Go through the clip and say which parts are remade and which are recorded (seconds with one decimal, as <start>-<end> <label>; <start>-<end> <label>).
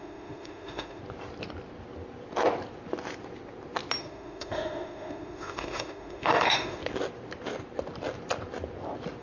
0.0-1.0 remade; 1.0-4.0 recorded; 4.0-6.8 remade; 6.8-9.2 recorded